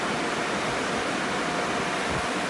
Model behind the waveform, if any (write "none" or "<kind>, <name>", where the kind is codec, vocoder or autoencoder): none